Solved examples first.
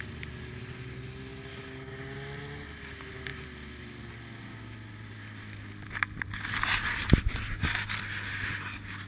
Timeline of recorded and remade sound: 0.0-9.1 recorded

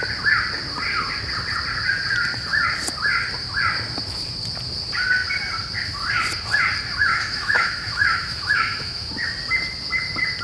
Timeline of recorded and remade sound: 0.0-7.1 recorded; 7.1-9.1 remade; 9.1-10.4 recorded

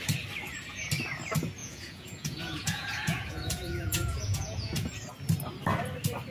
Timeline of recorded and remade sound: 0.0-1.6 recorded; 1.6-4.9 remade; 4.9-6.3 recorded

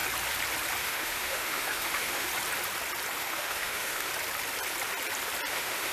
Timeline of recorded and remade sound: 0.0-0.8 recorded; 0.8-2.3 remade; 2.3-3.1 recorded; 3.1-4.1 remade; 4.1-5.5 recorded; 5.5-5.9 remade

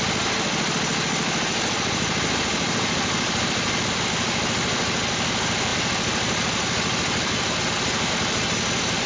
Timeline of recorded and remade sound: 0.0-9.1 recorded

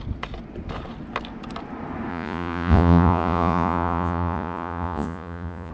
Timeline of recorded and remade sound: 0.0-2.1 recorded; 2.1-5.7 remade